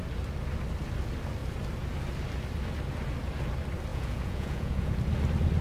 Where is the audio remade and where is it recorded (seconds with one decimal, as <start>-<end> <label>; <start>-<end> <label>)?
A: 0.0-3.9 recorded; 3.9-5.0 remade; 5.0-5.6 recorded